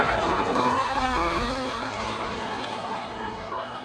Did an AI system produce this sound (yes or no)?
yes